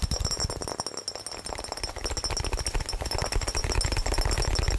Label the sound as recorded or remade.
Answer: recorded